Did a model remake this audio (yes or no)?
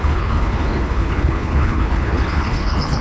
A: yes